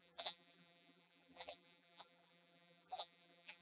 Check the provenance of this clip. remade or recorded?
remade